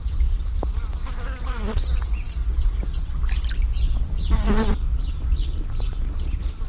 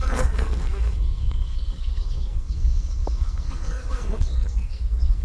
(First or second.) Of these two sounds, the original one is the first